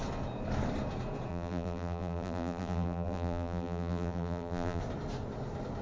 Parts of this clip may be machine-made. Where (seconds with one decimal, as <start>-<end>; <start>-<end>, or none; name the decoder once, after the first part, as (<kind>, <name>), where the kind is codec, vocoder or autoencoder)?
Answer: 1.3-4.8 (vocoder, BigVGAN v2)